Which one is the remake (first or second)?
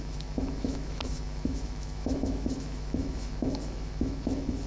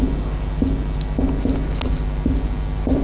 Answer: first